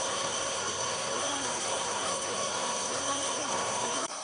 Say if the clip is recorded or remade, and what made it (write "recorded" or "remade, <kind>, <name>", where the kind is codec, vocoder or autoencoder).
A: remade, codec, SNAC